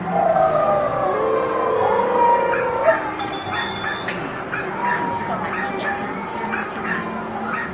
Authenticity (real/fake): real